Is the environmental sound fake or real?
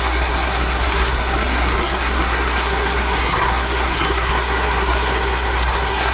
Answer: fake